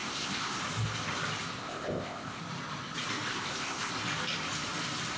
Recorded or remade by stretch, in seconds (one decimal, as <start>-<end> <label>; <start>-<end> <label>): 0.0-0.6 remade; 0.6-1.6 recorded; 1.6-2.4 remade; 2.4-3.3 recorded; 3.3-3.9 remade; 3.9-5.2 recorded